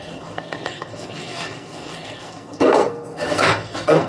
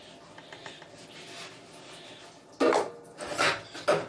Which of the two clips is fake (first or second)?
first